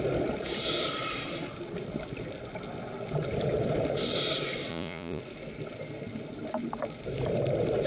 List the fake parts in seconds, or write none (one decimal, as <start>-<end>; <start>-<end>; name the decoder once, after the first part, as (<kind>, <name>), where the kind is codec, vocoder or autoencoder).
4.7-5.2 (vocoder, Vocos)